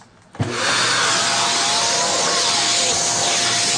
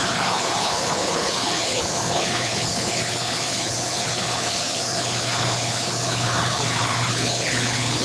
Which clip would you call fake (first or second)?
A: second